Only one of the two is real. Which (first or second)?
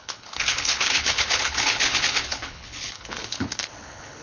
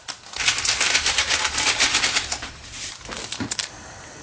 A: second